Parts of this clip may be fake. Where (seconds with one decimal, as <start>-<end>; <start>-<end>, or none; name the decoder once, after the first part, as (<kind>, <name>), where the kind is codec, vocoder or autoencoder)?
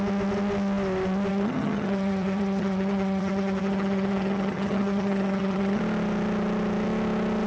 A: 1.3-5.8 (vocoder, HiFi-GAN)